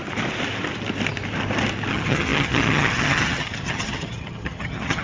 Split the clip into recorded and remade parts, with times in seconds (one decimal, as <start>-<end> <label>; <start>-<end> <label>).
0.0-1.9 recorded; 1.9-5.0 remade